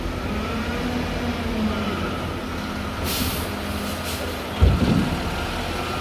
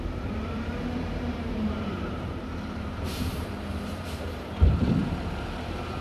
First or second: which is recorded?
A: first